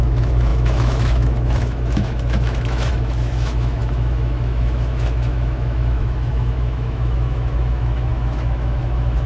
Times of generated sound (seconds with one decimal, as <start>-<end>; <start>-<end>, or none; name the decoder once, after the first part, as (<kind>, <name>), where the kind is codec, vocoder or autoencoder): 0.0-9.3 (autoencoder, DAC-VAE)

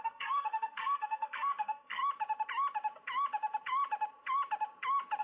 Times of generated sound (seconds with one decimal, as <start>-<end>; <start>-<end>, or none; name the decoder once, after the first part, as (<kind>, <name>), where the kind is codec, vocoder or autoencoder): 0.0-2.0 (codec, SNAC)

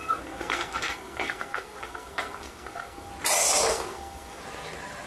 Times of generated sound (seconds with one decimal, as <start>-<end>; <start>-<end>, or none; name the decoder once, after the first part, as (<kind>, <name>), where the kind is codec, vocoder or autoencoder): 0.0-3.1 (codec, SNAC); 3.7-4.4

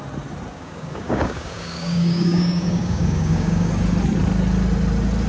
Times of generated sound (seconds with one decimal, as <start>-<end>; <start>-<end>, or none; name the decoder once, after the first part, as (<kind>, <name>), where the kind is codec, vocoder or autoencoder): 0.5-3.7 (codec, DAC)

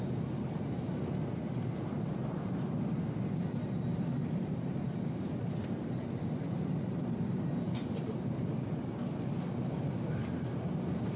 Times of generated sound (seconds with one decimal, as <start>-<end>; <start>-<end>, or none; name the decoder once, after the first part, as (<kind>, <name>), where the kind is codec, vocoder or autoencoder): 3.9-8.4 (vocoder, BigVGAN v2)

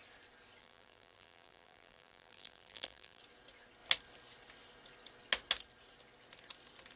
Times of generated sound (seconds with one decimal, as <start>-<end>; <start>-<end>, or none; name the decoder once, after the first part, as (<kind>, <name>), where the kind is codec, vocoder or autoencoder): 0.6-3.2 (vocoder, BigVGAN v2)

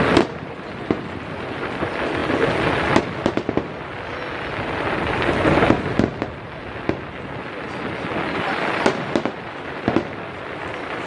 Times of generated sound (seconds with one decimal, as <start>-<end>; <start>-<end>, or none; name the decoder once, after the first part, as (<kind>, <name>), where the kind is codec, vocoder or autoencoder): none